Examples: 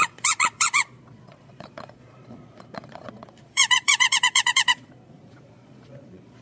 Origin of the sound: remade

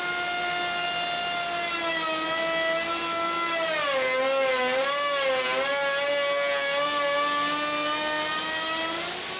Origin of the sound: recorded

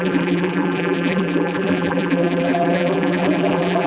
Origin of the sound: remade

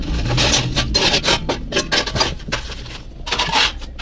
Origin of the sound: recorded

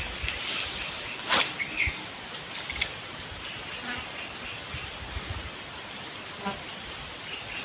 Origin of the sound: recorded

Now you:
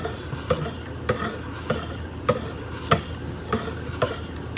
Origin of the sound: recorded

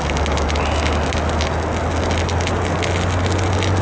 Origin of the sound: recorded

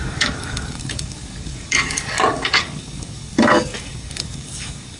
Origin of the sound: remade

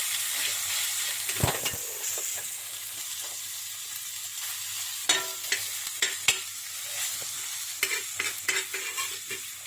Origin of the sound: recorded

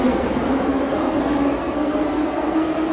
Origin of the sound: remade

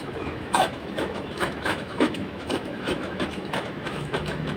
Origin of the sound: remade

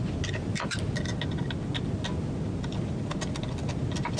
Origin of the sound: recorded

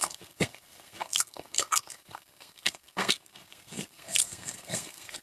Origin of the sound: remade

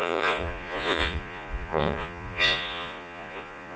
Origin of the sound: remade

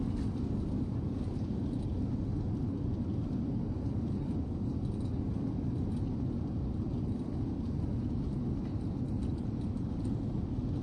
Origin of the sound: recorded